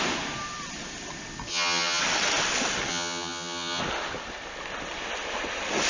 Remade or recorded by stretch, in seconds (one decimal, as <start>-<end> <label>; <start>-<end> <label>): 0.0-1.5 recorded; 1.5-2.0 remade; 2.0-2.9 recorded; 2.9-3.8 remade; 3.8-5.9 recorded